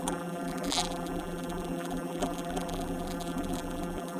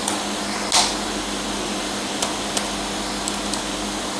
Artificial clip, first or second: first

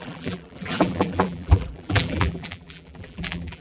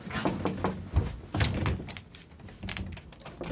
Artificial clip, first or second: first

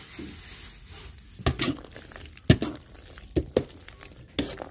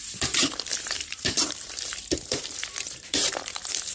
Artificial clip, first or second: second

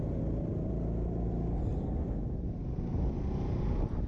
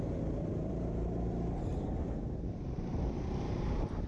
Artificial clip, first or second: second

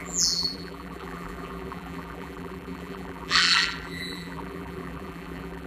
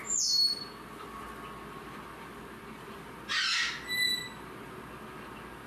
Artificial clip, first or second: first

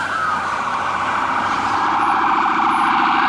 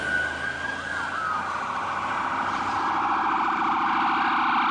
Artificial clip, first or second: first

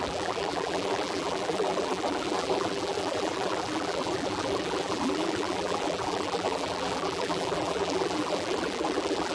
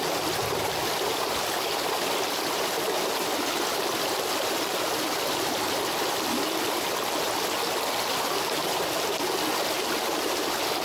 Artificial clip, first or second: first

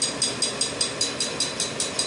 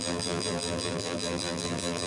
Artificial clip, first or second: second